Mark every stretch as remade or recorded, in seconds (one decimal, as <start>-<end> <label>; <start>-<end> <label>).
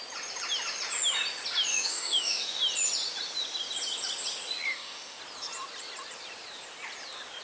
0.0-1.7 recorded; 1.7-2.6 remade; 2.6-4.7 recorded; 4.7-5.2 remade; 5.2-7.4 recorded